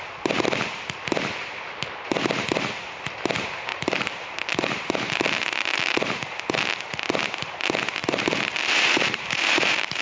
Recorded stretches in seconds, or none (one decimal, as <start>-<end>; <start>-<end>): 0.0-3.7; 4.5-8.0